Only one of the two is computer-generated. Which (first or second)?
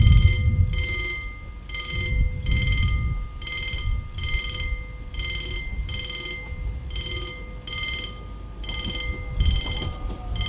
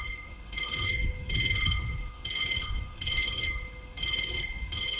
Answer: second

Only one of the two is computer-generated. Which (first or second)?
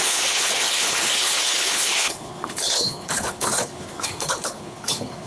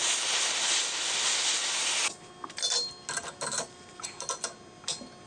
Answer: first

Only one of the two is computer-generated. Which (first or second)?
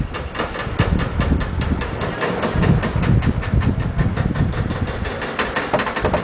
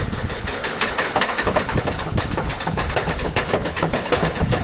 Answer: second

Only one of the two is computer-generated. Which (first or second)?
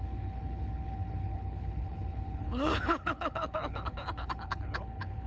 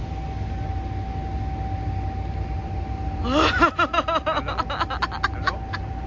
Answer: first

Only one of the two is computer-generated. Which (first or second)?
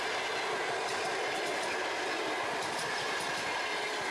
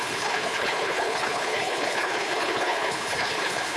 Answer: second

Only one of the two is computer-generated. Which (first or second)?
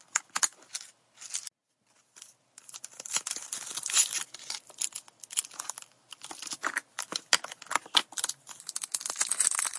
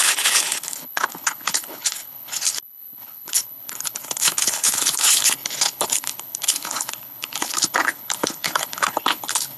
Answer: second